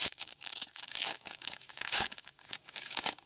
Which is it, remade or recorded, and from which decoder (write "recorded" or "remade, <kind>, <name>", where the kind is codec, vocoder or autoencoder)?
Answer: remade, codec, DAC